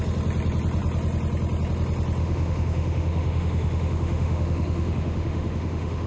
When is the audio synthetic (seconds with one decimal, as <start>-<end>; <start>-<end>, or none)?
2.2-6.1